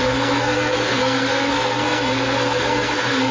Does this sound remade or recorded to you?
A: remade